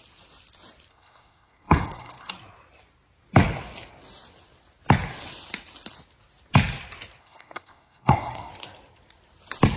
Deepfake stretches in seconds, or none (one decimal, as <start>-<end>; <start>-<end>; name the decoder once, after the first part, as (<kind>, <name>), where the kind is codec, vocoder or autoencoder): 0.9-2.3 (codec, SNAC); 7.2-8.5